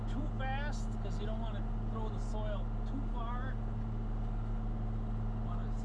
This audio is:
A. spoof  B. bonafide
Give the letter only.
B